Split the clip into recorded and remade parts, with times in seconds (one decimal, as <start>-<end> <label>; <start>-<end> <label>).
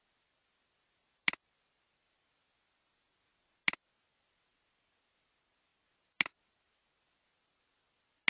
0.0-8.3 recorded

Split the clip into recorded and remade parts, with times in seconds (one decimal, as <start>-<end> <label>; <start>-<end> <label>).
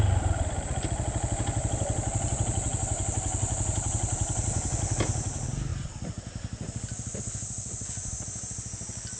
0.0-9.2 recorded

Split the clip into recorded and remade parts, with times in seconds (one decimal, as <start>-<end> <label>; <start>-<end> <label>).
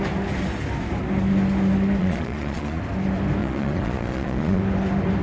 0.0-2.0 recorded; 2.0-2.8 remade; 2.8-3.4 recorded; 3.4-4.6 remade; 4.6-5.2 recorded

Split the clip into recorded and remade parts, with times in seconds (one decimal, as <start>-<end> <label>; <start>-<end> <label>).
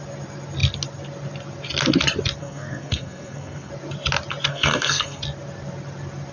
0.0-2.4 recorded; 2.4-3.7 remade; 3.7-4.5 recorded; 4.5-5.2 remade; 5.2-6.3 recorded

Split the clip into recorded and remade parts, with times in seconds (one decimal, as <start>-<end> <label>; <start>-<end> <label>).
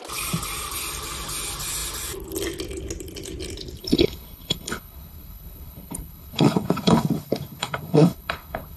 0.0-3.8 recorded; 3.8-8.8 remade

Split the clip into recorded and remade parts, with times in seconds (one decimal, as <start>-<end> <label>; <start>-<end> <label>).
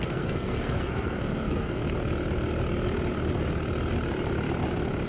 0.0-1.8 remade; 1.8-5.1 recorded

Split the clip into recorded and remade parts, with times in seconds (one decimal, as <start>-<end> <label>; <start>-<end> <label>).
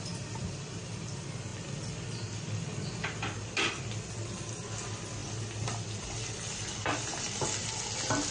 0.0-8.3 recorded